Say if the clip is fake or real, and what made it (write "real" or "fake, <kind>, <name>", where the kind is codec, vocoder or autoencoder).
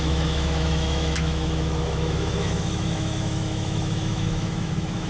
fake, autoencoder, DAC-VAE